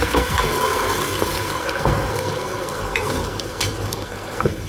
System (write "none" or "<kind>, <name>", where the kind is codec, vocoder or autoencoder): codec, SNAC